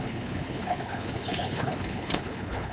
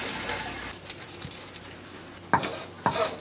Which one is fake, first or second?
first